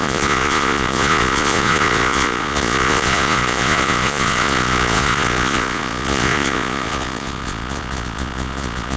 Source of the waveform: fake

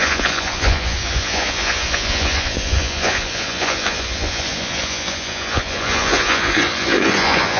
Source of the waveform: fake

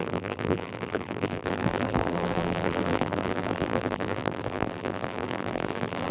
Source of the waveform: fake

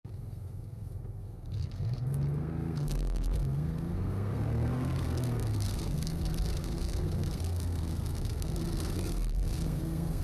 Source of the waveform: fake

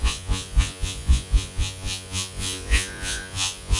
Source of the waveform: fake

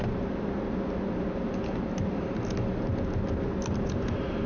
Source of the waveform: real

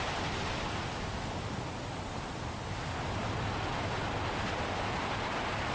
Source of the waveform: real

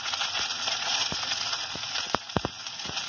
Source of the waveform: fake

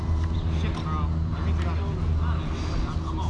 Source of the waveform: real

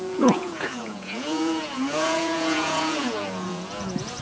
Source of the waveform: fake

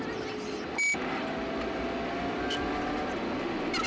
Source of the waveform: real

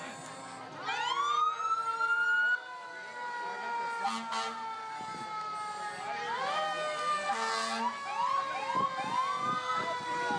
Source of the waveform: real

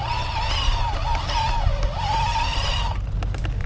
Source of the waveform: real